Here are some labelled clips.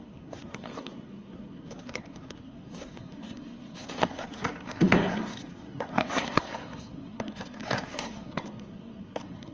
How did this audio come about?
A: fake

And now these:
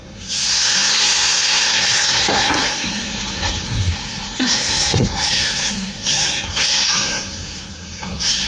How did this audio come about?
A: fake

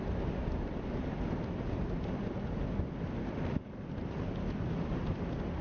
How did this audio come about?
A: real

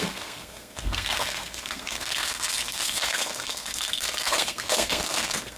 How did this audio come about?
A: fake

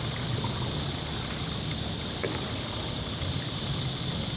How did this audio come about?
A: real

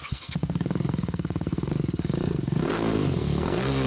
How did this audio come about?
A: fake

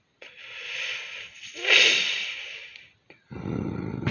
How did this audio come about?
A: real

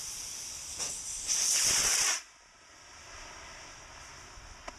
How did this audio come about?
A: real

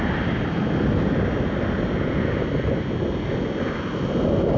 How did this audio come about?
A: real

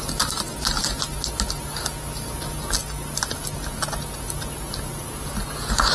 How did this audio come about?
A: real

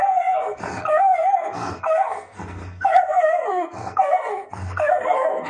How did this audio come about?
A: fake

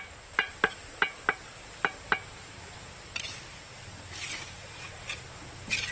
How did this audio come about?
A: real